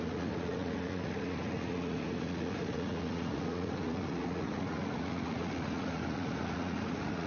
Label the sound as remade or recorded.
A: remade